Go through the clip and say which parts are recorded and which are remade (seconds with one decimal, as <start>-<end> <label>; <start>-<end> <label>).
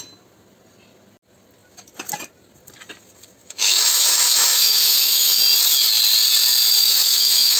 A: 0.0-3.4 recorded; 3.4-5.4 remade; 5.4-6.8 recorded; 6.8-7.6 remade